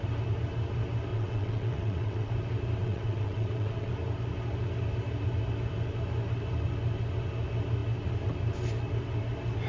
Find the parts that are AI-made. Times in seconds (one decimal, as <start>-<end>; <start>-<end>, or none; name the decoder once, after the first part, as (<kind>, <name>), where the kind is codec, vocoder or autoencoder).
1.1-2.3 (vocoder, WaveNeXt); 2.8-3.9